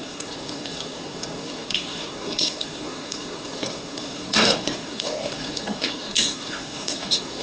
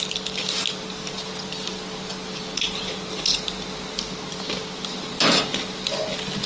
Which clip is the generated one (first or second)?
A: first